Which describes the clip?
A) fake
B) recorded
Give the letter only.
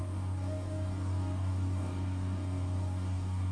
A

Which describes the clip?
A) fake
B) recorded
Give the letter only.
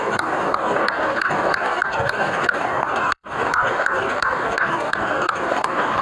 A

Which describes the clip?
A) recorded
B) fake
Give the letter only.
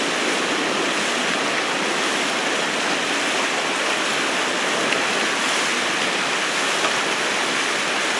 A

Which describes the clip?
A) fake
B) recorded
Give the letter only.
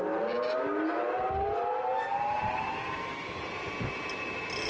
B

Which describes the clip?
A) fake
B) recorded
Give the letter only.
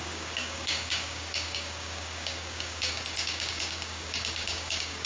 A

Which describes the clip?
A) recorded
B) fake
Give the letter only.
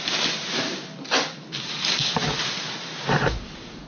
A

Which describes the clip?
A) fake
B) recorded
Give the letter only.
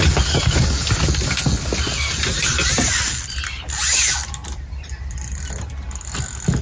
B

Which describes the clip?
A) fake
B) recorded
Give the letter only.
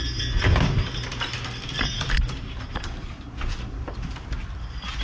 B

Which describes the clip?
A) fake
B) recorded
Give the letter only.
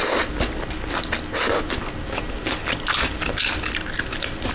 B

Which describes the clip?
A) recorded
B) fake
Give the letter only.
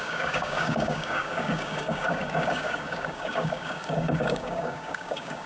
B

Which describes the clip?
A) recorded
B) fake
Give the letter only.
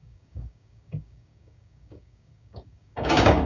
B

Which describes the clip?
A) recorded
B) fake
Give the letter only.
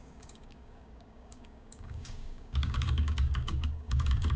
B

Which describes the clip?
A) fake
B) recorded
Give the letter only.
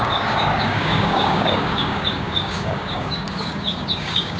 A